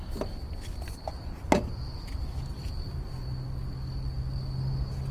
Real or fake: real